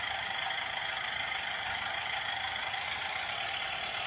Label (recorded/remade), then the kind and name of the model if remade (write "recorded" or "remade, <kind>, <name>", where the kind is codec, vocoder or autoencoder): recorded